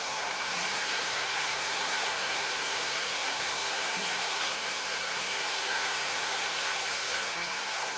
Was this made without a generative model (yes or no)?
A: no